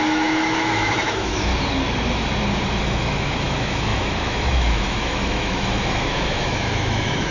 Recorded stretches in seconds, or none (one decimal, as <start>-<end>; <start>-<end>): 1.5-2.8